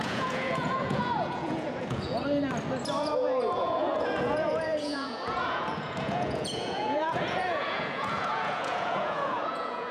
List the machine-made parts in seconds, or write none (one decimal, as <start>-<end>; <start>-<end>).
0.0-2.2; 3.0-9.9